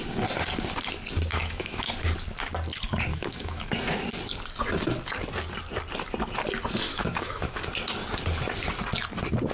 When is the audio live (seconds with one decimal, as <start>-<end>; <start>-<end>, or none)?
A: 0.0-1.3; 1.9-3.1; 3.7-6.9; 7.6-9.5

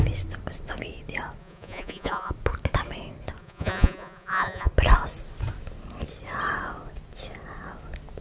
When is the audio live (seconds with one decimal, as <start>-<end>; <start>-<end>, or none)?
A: 0.0-1.4; 2.3-3.4; 4.7-8.2

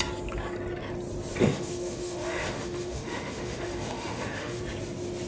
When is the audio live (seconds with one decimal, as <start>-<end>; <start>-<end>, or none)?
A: 0.0-1.4; 4.6-5.3

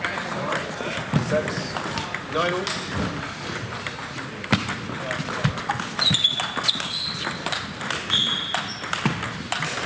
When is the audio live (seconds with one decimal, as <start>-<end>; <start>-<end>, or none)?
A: 0.0-9.9

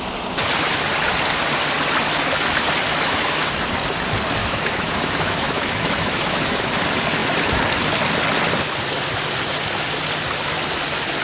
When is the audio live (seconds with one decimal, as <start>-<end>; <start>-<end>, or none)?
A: 0.0-2.9; 3.5-4.4; 6.7-11.2